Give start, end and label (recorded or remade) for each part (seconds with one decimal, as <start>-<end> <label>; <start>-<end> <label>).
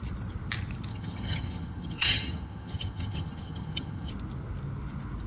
0.0-0.9 recorded; 0.9-4.1 remade; 4.1-5.3 recorded